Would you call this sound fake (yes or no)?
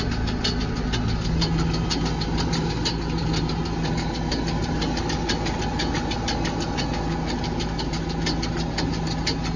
no